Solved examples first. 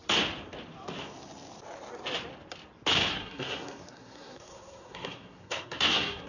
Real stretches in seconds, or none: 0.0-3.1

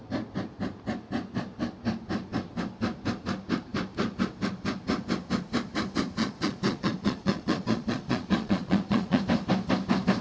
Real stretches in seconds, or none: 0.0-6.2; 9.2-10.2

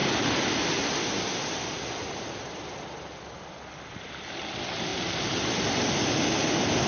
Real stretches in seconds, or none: 0.0-6.9